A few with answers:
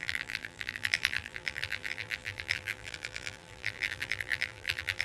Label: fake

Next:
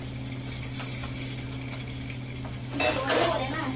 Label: real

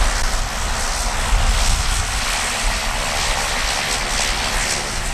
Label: real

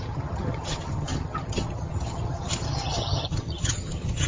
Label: fake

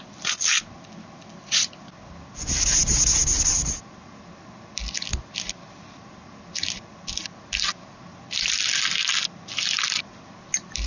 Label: real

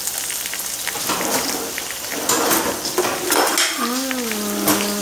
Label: real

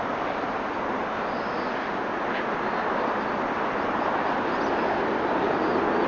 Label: real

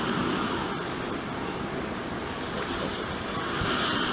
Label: fake